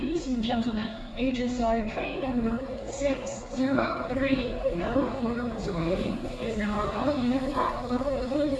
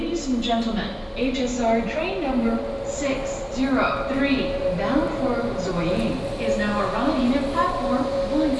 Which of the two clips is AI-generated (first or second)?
first